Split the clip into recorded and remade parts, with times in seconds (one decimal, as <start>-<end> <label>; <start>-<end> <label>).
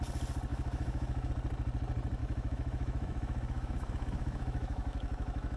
0.0-0.5 recorded; 0.5-1.3 remade; 1.3-2.2 recorded; 2.2-5.6 remade